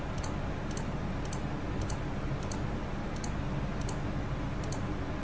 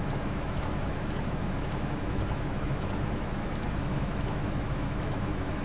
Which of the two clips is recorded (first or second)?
first